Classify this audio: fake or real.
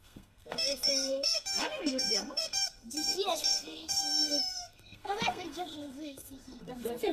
fake